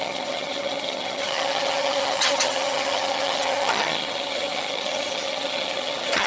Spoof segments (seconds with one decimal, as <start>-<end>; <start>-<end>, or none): 0.0-6.3